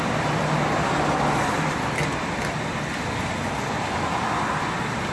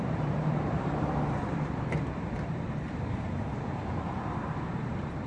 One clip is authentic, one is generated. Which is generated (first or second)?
second